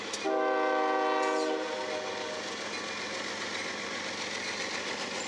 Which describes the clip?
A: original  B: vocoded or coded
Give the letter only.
A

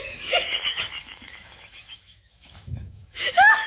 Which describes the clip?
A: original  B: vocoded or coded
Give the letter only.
B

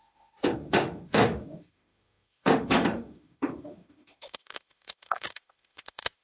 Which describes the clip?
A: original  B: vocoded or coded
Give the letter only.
B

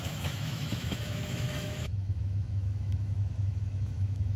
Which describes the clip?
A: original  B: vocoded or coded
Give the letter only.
B